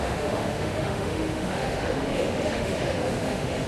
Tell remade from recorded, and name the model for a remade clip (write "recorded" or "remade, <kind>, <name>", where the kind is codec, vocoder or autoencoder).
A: remade, autoencoder, DAC-VAE